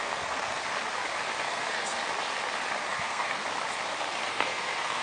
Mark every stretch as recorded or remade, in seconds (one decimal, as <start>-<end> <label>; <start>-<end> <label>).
0.0-0.6 remade; 0.6-1.4 recorded; 1.4-2.0 remade; 2.0-2.9 recorded; 2.9-3.4 remade; 3.4-4.3 recorded; 4.3-5.0 remade

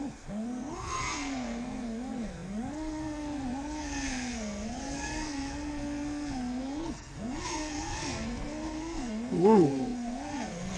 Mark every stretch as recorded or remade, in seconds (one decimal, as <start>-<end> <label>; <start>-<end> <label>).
0.0-10.8 remade

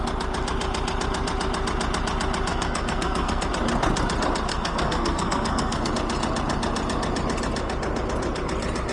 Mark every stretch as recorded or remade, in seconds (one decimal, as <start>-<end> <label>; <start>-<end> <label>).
0.0-2.5 recorded; 2.5-3.5 remade; 3.5-4.5 recorded; 4.5-5.9 remade; 5.9-8.9 recorded

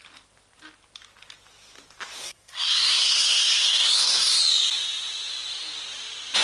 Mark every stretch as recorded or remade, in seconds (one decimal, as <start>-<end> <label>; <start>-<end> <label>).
0.0-2.2 recorded; 2.2-4.4 remade; 4.4-6.4 recorded

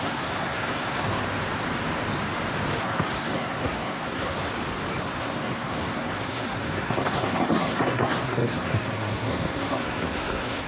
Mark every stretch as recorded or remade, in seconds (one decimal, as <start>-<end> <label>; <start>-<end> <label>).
0.0-1.2 remade; 1.2-2.8 recorded; 2.8-4.5 remade; 4.5-5.0 recorded; 5.0-10.7 remade

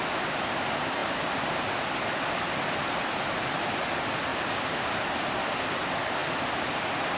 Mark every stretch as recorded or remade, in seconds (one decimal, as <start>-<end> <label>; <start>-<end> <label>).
0.0-7.2 recorded

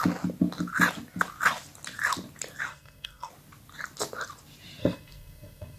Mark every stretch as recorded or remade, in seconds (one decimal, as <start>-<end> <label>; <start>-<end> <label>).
0.0-2.7 recorded; 2.7-3.3 remade; 3.3-4.8 recorded; 4.8-5.8 remade